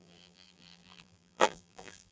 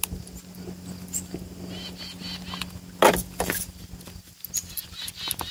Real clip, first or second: second